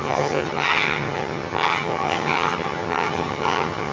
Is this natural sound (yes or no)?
no